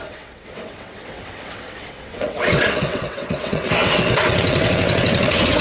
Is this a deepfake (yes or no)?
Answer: yes